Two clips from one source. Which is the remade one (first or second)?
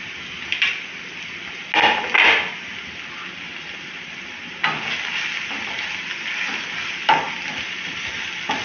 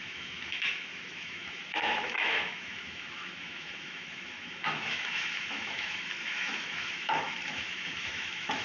second